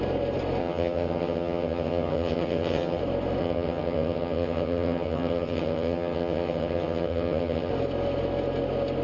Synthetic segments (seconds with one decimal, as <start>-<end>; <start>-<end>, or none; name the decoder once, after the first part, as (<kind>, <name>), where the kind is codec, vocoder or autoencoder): 0.6-3.0 (vocoder, HiFi-GAN); 3.4-7.7